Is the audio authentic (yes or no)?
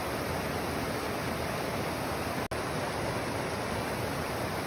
yes